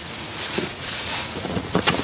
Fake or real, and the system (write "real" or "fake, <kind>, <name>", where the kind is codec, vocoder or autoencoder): fake, vocoder, Vocos